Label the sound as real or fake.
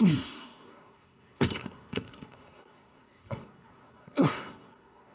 fake